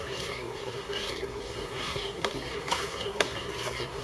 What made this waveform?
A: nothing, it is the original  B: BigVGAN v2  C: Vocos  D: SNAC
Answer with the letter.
D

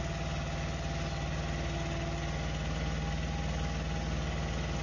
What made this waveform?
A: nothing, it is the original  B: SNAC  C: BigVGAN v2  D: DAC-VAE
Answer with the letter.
A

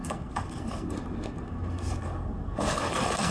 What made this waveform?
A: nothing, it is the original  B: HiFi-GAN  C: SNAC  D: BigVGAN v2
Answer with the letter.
C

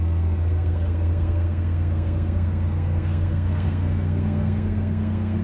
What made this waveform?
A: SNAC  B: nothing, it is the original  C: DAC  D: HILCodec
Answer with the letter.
A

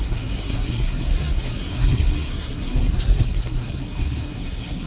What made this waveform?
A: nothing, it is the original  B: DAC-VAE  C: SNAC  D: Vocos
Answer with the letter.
C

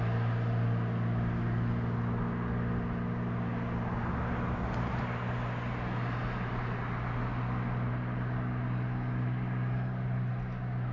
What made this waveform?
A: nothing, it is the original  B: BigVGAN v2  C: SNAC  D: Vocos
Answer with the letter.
A